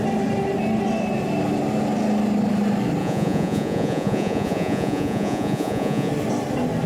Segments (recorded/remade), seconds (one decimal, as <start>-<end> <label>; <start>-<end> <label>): 0.0-3.0 recorded; 3.0-6.1 remade; 6.1-6.9 recorded